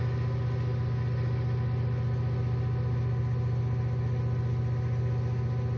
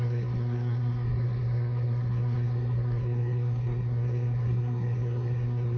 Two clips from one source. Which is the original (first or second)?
first